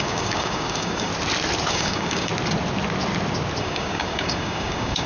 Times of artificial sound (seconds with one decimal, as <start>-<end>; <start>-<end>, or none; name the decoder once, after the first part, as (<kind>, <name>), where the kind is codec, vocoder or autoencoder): 0.0-1.1 (codec, DAC); 1.7-2.3; 3.6-5.1